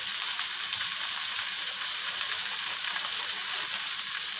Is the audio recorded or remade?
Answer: remade